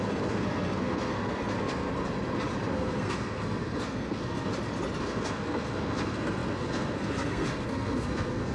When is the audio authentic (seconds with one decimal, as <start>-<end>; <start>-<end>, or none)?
1.9-2.7; 4.5-5.0